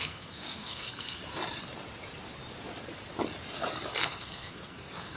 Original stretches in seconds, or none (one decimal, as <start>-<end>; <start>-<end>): 1.2-4.0